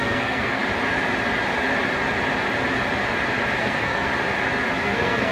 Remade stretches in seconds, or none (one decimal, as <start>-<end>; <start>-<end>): 0.0-0.6; 3.6-4.1; 4.7-5.3